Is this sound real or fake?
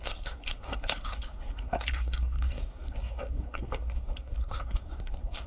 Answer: fake